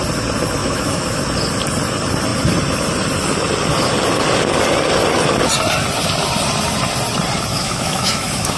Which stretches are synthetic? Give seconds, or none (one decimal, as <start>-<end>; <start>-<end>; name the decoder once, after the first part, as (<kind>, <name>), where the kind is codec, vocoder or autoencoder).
0.6-1.2 (autoencoder, DAC-VAE); 7.5-8.6